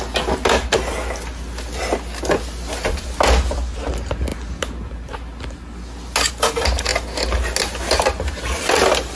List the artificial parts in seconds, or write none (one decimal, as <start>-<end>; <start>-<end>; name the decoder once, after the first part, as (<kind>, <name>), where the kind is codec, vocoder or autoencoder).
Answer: none